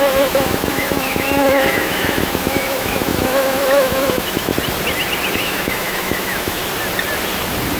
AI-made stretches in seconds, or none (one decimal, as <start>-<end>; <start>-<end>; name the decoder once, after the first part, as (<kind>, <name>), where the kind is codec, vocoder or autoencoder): 0.0-4.5 (autoencoder, DAC-VAE); 5.3-6.6